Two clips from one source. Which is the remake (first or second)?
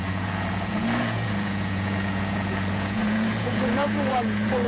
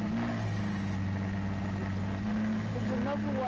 first